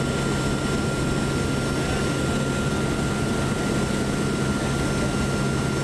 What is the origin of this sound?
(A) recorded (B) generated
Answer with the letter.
A